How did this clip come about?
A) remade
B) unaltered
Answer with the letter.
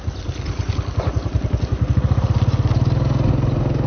B